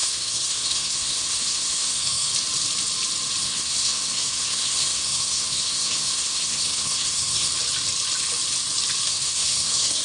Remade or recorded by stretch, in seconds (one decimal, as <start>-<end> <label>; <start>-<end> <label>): 0.0-2.3 remade; 2.3-3.4 recorded; 3.4-7.5 remade; 7.5-9.1 recorded; 9.1-10.0 remade